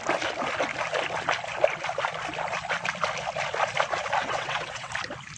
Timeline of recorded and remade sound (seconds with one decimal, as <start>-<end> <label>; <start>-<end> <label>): 0.0-4.2 recorded; 4.2-4.9 remade; 4.9-5.4 recorded